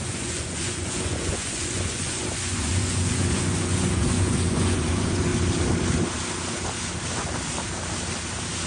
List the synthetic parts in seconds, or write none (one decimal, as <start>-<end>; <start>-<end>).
0.0-5.3